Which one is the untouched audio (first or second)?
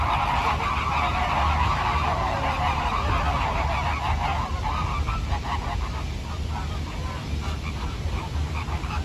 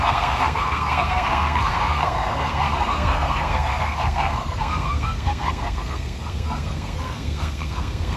first